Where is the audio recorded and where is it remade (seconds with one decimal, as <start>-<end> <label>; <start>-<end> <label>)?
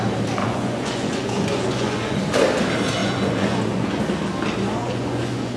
0.0-0.4 recorded; 0.4-2.2 remade; 2.2-3.0 recorded; 3.0-4.0 remade; 4.0-4.8 recorded; 4.8-5.6 remade